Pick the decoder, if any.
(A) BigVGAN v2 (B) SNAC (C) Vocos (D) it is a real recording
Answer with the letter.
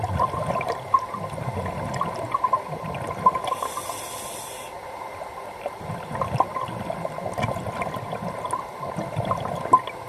D